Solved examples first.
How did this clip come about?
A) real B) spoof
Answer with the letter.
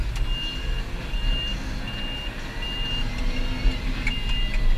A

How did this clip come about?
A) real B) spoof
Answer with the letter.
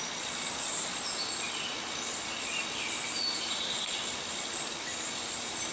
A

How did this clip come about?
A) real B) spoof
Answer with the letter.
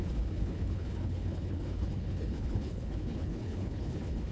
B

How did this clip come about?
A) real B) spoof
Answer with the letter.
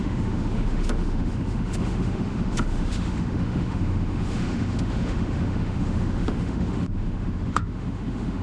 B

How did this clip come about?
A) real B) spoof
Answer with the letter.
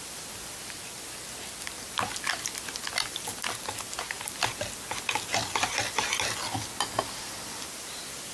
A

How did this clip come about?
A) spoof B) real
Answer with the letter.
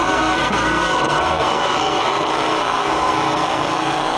A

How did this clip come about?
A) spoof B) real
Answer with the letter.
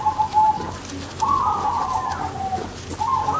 B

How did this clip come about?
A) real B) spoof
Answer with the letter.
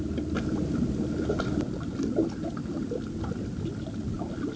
A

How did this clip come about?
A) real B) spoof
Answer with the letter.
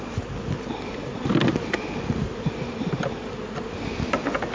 A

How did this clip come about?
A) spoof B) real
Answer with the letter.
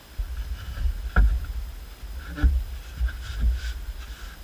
B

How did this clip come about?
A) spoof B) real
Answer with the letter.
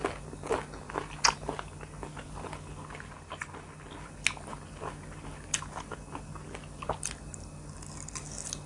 B